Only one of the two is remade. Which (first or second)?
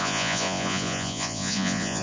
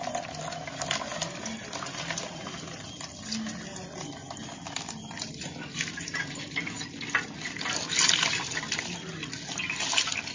first